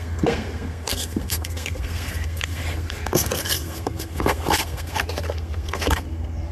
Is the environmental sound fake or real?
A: fake